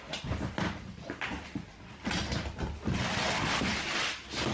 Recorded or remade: recorded